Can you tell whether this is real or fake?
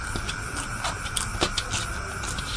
real